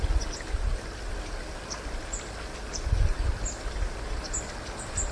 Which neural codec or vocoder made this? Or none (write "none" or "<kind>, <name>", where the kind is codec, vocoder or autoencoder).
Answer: none